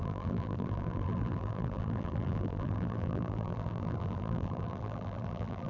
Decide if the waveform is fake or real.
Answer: fake